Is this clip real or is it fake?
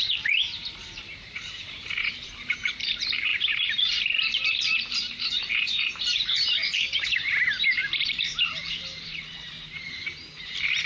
fake